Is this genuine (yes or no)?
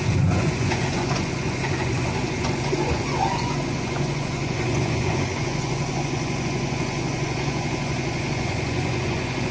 no